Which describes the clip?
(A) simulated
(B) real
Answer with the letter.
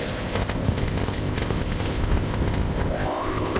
A